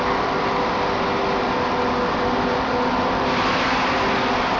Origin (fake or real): real